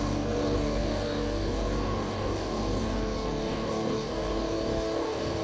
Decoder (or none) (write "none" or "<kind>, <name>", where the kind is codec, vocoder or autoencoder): codec, DAC